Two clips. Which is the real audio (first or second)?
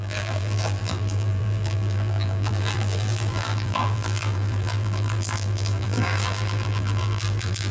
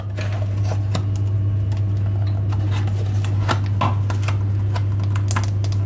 second